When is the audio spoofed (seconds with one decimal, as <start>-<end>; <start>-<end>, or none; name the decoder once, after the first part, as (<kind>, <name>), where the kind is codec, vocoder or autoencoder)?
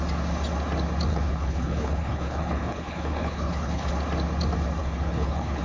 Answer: 1.1-3.9 (codec, HILCodec); 4.8-5.6